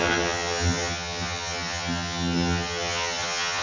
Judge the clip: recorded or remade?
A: remade